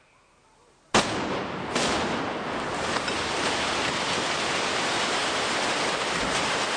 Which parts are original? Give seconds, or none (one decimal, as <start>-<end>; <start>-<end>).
0.0-6.8